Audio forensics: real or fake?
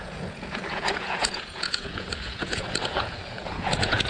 fake